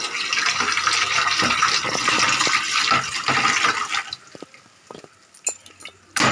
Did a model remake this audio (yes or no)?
no